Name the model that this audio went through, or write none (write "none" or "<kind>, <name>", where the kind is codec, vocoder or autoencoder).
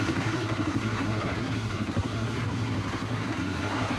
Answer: codec, SNAC